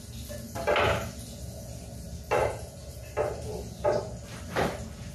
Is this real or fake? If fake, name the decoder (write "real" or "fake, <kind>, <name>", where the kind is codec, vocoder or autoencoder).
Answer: real